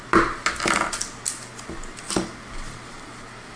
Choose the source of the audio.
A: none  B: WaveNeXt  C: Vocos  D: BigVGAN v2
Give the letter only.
A